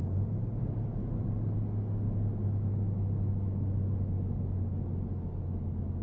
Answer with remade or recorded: recorded